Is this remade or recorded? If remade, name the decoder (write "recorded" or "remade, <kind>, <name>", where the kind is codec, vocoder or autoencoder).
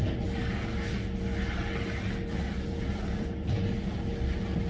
recorded